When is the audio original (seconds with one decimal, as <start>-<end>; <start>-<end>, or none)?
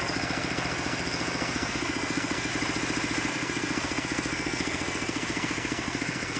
2.5-3.3